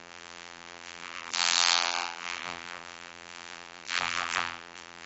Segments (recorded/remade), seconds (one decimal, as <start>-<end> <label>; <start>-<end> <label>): 0.0-5.1 remade